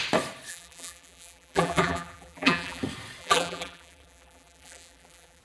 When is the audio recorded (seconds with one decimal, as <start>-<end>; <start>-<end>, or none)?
0.0-0.5; 2.8-3.2